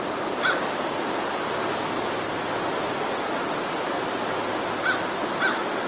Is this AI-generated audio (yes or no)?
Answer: no